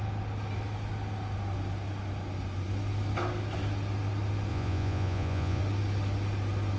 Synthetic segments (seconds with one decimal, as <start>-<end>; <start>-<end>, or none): 4.5-5.6